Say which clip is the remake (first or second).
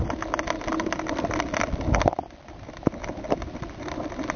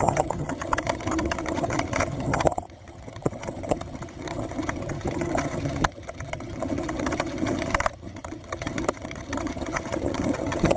second